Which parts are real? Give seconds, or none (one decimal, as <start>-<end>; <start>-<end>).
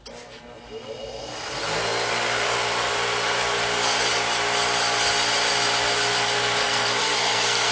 0.0-6.6